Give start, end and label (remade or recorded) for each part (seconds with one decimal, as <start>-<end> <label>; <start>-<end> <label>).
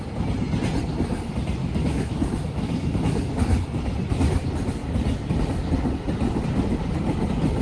0.0-1.6 recorded; 1.6-3.3 remade; 3.3-7.6 recorded